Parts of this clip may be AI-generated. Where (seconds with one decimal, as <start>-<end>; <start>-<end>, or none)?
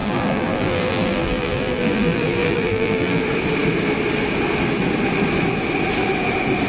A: 0.0-3.2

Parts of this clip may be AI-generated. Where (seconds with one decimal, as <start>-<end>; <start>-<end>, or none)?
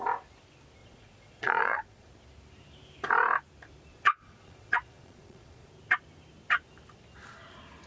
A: 0.8-2.1; 3.9-5.7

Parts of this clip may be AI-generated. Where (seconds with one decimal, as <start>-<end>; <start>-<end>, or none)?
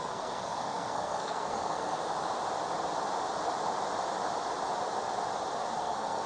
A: 0.0-2.0; 5.8-6.3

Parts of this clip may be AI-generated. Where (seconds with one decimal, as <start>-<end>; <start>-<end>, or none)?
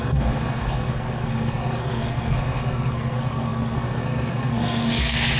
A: 0.0-5.4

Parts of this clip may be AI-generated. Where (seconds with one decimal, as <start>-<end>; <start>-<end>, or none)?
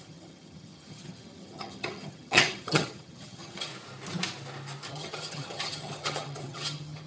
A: 0.0-3.7; 4.9-7.1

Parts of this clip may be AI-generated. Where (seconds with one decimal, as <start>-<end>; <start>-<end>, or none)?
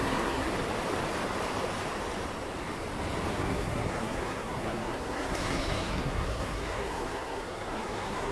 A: 0.0-0.5; 3.3-8.3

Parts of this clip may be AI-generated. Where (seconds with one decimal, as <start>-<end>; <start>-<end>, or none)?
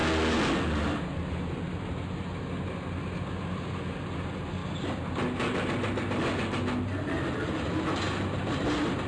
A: 3.4-4.6; 7.3-9.1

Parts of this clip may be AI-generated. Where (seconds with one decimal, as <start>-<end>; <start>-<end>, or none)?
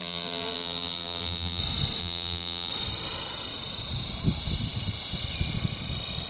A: 0.0-1.6; 2.0-2.7